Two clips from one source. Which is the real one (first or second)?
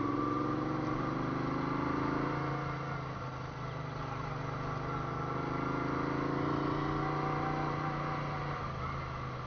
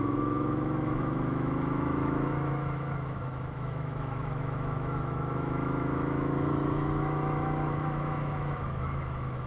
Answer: first